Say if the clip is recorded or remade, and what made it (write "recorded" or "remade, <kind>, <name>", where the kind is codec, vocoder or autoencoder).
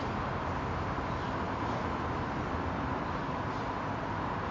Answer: recorded